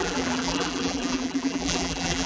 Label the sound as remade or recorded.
remade